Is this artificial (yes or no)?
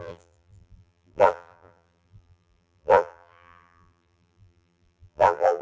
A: yes